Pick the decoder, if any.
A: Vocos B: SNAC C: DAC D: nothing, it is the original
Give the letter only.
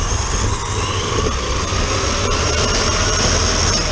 D